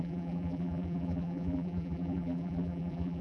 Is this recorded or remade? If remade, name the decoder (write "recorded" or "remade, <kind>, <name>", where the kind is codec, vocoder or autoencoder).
remade, vocoder, BigVGAN v2